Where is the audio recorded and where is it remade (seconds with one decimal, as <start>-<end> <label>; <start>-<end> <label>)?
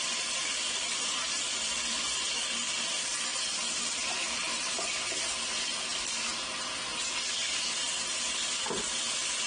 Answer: 0.0-9.5 recorded